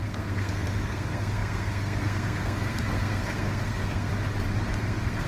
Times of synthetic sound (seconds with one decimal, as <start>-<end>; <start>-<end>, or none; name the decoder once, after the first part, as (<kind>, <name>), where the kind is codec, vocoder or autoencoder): 0.0-4.1 (codec, SNAC); 4.8-5.3